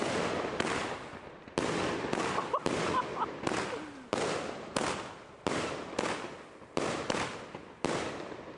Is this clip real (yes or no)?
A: yes